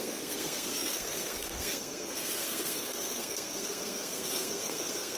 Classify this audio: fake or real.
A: fake